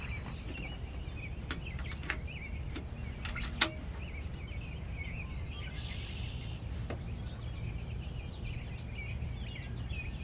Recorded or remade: recorded